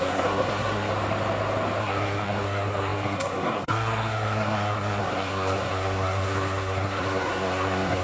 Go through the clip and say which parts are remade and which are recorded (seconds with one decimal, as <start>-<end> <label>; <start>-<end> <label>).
0.0-0.9 remade; 0.9-1.8 recorded; 1.8-8.0 remade